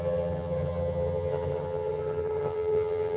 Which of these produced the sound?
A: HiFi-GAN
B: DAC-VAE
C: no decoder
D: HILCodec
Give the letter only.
A